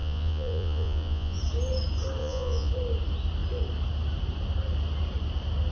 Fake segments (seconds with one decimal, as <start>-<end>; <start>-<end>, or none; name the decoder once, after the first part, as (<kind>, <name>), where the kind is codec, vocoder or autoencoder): 0.0-1.4 (vocoder, Vocos); 2.2-2.7